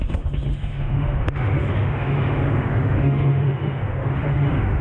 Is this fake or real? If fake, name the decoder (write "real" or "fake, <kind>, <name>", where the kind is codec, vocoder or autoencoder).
fake, autoencoder, DAC-VAE